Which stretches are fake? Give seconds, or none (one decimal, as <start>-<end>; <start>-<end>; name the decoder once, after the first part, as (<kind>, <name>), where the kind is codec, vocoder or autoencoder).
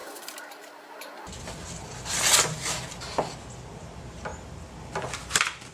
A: none